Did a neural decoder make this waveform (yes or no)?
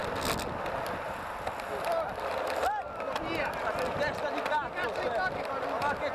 no